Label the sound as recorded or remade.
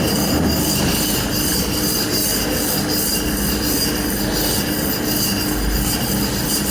recorded